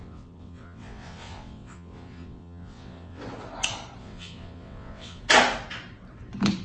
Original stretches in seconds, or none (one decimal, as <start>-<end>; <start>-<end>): 3.2-4.0; 5.2-6.6